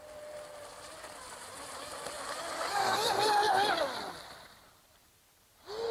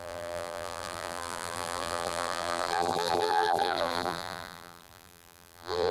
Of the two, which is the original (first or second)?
first